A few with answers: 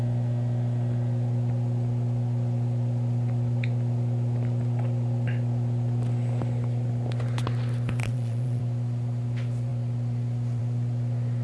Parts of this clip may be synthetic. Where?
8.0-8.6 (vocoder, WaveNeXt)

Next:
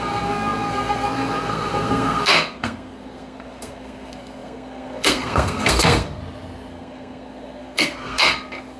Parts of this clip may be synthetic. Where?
0.0-6.2 (codec, SNAC); 6.7-8.8

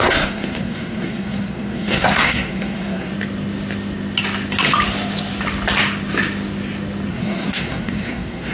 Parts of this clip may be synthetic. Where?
0.0-3.1 (codec, SNAC); 7.1-8.5

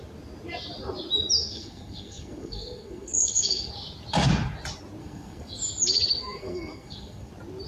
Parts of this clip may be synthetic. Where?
1.4-3.7 (codec, SNAC); 5.0-5.6; 6.2-7.3

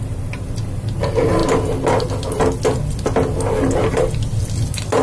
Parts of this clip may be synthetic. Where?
none